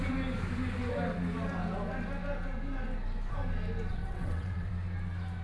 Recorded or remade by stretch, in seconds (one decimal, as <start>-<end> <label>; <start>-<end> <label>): 0.0-3.9 recorded; 3.9-4.7 remade; 4.7-5.4 recorded